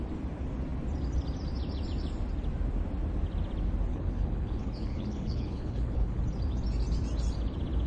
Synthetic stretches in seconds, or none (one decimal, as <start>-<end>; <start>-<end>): 3.9-6.2